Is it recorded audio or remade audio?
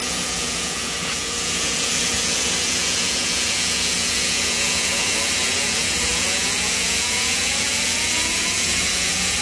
remade